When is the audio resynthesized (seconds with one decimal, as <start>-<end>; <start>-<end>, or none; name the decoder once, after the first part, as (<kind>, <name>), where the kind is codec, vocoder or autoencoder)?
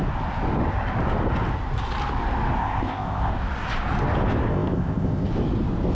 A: 2.6-3.3 (codec, ZipCodec); 4.5-5.3